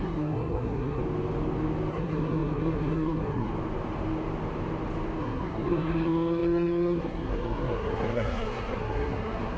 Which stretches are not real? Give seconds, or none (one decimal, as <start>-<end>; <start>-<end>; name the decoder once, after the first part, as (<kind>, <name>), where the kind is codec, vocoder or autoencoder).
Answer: 0.0-1.0 (codec, SNAC); 1.9-3.5; 5.2-9.6